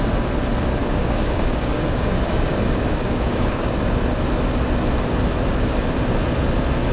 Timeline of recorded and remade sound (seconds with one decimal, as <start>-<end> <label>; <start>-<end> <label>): 0.0-0.8 recorded; 0.8-3.7 remade; 3.7-6.9 recorded

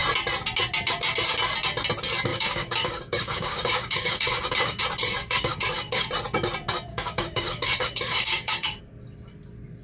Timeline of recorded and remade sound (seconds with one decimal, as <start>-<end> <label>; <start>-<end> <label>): 0.0-2.3 recorded; 2.3-4.8 remade; 4.8-5.2 recorded; 5.2-6.1 remade; 6.1-6.9 recorded; 6.9-8.8 remade; 8.8-9.8 recorded

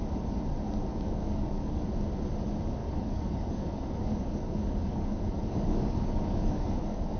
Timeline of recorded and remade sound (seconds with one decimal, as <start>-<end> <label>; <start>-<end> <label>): 0.0-0.9 recorded; 0.9-1.8 remade; 1.8-2.8 recorded; 2.8-7.2 remade

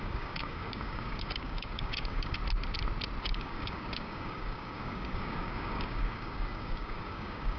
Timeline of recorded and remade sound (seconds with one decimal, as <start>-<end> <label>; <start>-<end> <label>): 0.0-2.4 remade; 2.4-3.2 recorded; 3.2-7.6 remade

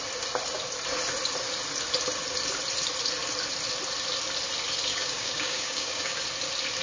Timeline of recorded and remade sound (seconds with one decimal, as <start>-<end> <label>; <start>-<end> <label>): 0.0-4.9 recorded; 4.9-6.2 remade; 6.2-6.8 recorded

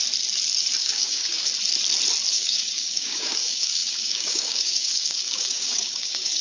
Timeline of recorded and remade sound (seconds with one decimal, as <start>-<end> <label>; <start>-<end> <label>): 0.0-0.8 recorded; 0.8-1.5 remade; 1.5-2.3 recorded; 2.3-6.4 remade